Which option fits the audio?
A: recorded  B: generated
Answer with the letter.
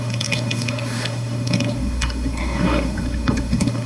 B